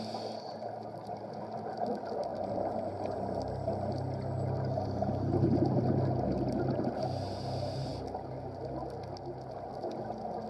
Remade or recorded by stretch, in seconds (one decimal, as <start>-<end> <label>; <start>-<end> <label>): 0.0-2.3 recorded; 2.3-6.7 remade; 6.7-10.5 recorded